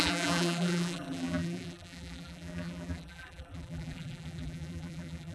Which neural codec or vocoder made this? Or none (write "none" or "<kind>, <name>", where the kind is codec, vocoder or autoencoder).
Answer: vocoder, BigVGAN v2